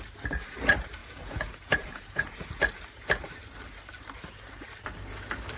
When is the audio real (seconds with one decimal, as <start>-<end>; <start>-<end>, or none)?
0.0-1.0; 2.6-5.6